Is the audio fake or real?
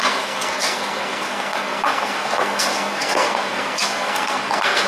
fake